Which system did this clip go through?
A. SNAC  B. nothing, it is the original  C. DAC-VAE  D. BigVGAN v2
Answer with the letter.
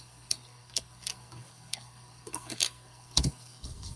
A